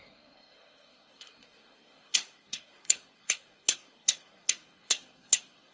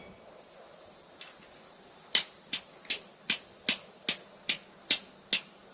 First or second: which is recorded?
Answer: second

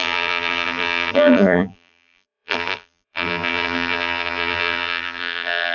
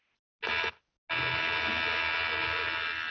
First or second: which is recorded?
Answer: second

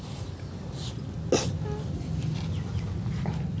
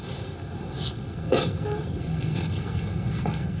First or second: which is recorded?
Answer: first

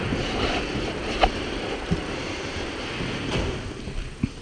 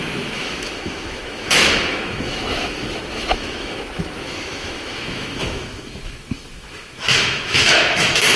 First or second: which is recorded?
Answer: first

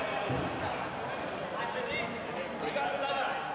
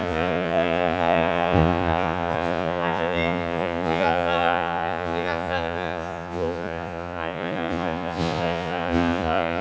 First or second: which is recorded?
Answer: first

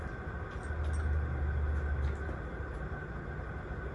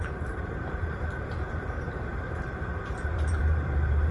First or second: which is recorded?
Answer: first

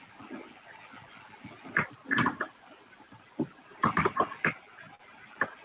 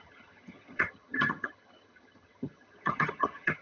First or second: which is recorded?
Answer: first